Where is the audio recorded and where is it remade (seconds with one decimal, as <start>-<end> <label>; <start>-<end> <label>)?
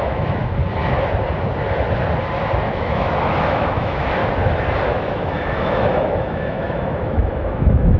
0.0-0.4 remade; 0.4-2.6 recorded; 2.6-4.2 remade; 4.2-4.9 recorded; 4.9-8.0 remade